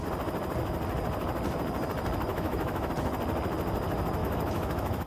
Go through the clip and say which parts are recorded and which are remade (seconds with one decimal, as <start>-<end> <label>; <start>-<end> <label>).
0.0-2.3 recorded; 2.3-2.9 remade; 2.9-4.2 recorded; 4.2-5.1 remade